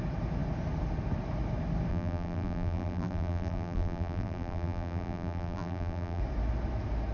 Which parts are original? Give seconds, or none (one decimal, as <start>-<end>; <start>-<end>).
0.0-1.9; 6.2-7.1

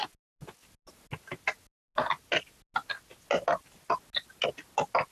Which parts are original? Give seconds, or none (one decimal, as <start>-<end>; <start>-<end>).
0.0-5.1

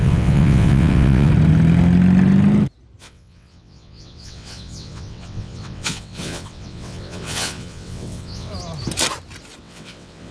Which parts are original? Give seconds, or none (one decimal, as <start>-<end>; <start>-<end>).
1.3-3.0; 8.5-9.6

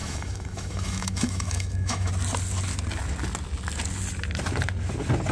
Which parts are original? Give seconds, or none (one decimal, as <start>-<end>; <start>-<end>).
2.1-5.3

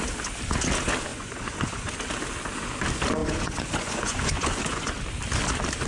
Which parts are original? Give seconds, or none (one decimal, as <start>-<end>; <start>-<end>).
0.0-1.1; 1.9-3.2; 4.9-5.9